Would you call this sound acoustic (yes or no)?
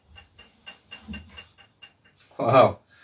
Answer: yes